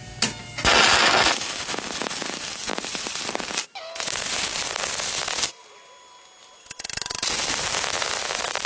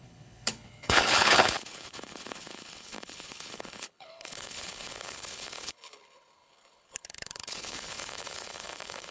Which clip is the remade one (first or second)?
second